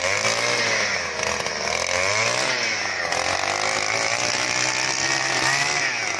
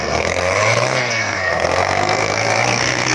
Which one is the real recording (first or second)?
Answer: first